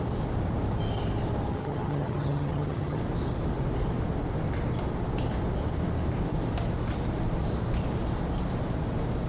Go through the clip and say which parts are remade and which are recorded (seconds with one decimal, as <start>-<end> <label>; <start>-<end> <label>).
0.0-1.5 recorded; 1.5-3.0 remade; 3.0-9.3 recorded